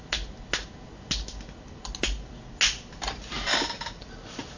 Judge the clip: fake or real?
real